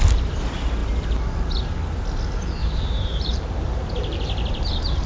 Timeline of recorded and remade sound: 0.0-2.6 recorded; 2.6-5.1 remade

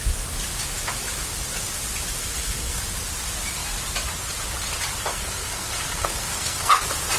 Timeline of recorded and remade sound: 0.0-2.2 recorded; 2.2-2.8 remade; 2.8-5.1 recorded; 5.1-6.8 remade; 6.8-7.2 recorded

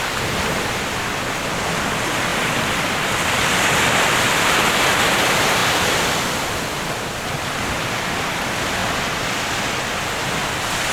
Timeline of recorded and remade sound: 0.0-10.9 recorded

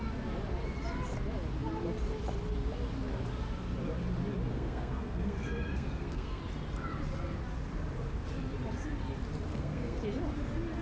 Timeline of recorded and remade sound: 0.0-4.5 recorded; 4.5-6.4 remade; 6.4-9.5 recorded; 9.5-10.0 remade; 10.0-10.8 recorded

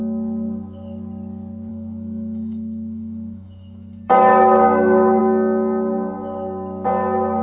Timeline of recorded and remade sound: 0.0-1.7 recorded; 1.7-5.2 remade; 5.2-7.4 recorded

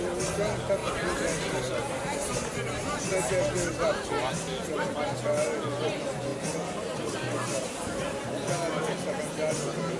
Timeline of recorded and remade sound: 0.0-0.8 recorded; 0.8-3.0 remade; 3.0-6.3 recorded; 6.3-8.3 remade; 8.3-10.0 recorded

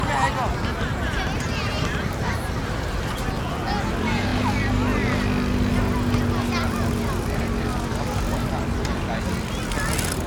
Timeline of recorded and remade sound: 0.0-10.3 recorded

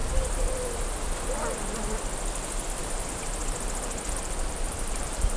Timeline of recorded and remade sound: 0.0-2.8 recorded; 2.8-3.4 remade; 3.4-4.2 recorded; 4.2-5.4 remade